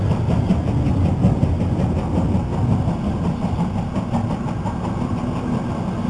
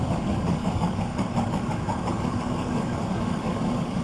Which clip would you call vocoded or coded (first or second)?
second